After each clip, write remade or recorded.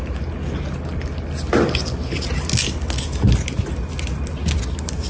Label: recorded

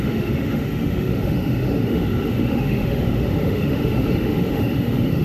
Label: remade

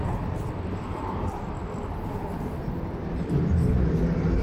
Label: recorded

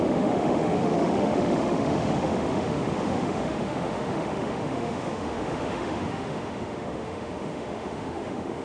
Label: remade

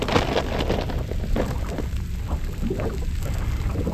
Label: recorded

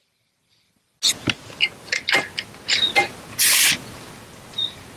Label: recorded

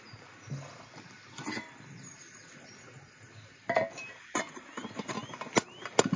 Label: recorded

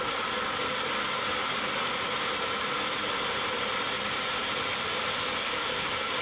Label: recorded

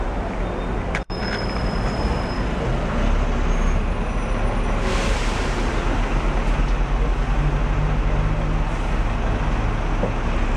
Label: recorded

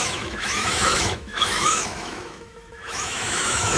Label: remade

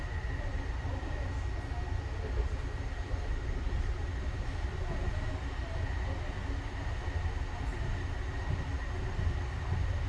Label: recorded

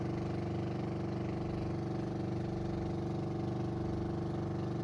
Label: recorded